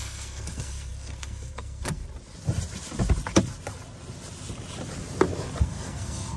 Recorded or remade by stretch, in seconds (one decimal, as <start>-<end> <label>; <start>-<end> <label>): 0.0-2.0 remade; 2.0-5.6 recorded; 5.6-6.4 remade